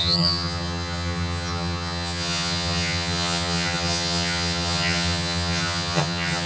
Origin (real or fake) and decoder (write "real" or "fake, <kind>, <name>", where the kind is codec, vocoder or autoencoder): fake, vocoder, HiFi-GAN